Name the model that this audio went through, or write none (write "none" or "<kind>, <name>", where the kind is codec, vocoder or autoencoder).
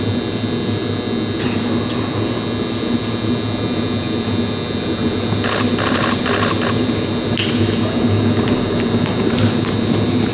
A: none